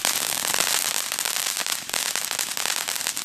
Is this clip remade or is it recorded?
recorded